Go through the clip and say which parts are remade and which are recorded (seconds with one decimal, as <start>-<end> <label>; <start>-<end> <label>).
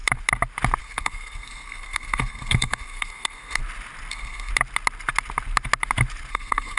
0.0-0.8 recorded; 0.8-3.6 remade; 3.6-4.1 recorded; 4.1-4.5 remade; 4.5-6.3 recorded; 6.3-6.8 remade